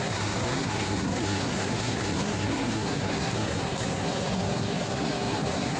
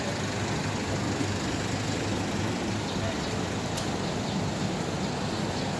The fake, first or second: first